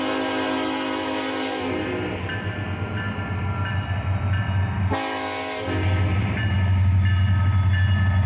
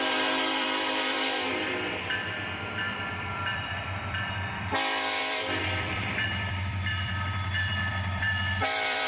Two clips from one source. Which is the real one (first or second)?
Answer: first